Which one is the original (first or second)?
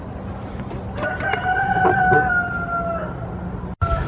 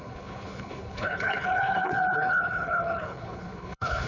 first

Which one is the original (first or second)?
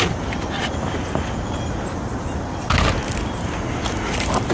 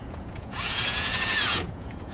first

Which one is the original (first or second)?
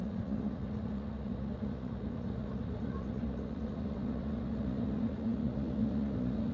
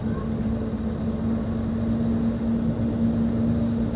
second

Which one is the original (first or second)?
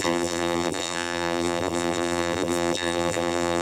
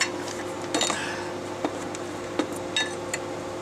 second